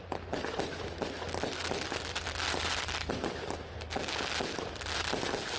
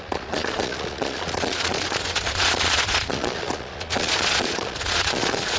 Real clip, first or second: first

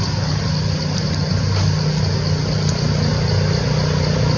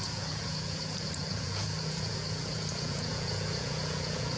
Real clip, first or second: first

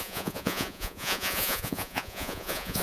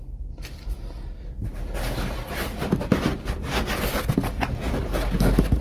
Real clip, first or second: second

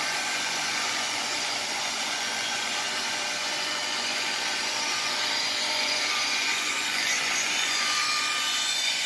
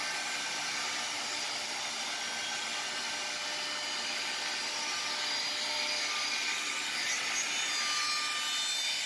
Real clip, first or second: second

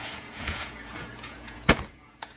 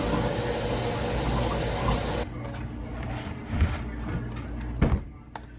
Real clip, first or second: second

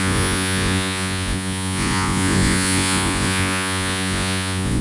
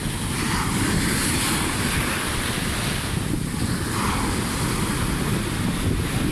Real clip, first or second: second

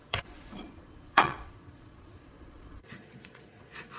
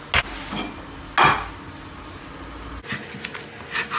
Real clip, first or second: second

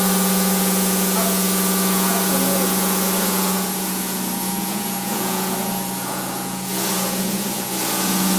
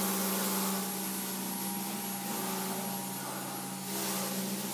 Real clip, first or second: second